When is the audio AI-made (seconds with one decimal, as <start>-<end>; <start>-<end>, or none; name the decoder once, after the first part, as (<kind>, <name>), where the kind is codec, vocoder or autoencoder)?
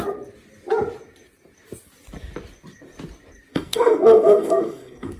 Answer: 3.5-5.2 (codec, SNAC)